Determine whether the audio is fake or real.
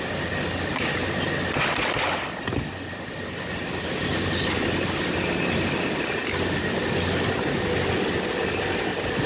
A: real